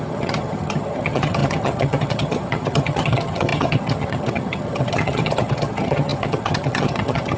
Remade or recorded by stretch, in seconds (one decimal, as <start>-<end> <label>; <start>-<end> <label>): 0.0-7.4 remade